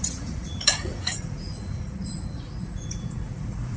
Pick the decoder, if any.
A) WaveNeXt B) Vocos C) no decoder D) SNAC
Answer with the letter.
B